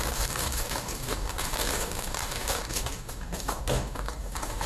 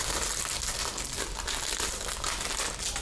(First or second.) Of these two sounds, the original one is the second